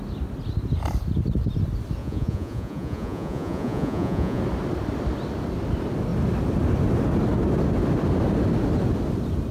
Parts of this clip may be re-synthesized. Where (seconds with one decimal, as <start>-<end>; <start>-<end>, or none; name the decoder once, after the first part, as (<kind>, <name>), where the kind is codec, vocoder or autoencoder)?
2.0-4.4 (vocoder, Vocos)

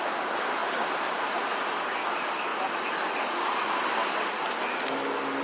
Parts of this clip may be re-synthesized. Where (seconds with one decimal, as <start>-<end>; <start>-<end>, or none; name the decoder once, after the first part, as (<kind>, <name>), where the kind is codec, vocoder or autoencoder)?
none

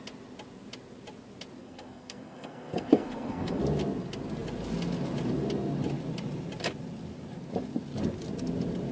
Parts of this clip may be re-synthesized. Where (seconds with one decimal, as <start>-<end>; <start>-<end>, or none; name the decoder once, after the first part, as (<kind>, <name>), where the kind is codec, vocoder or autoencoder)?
1.6-3.6 (codec, SNAC)